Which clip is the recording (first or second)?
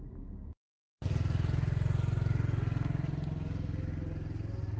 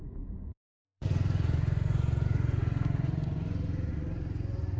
first